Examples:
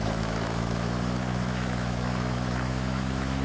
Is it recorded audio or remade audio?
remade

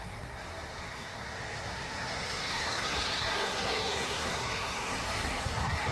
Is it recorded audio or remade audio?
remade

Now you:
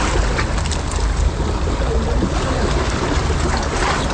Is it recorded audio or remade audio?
recorded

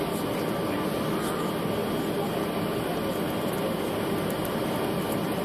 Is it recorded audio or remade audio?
recorded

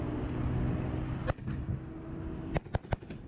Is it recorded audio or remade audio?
recorded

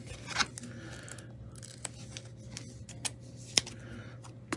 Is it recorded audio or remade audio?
recorded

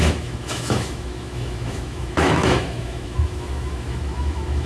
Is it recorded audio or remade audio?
remade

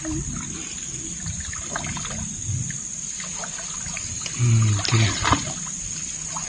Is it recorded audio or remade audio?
recorded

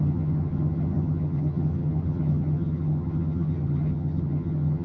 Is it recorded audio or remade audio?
remade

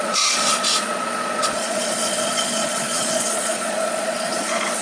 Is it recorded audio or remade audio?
remade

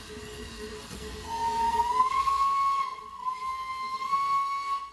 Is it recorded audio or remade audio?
remade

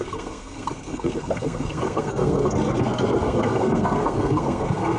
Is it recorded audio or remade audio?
remade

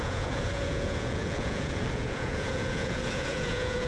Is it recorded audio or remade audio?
remade